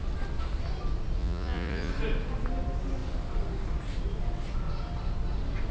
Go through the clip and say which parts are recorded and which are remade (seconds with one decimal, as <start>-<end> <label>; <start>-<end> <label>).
0.0-1.2 recorded; 1.2-1.9 remade; 1.9-5.7 recorded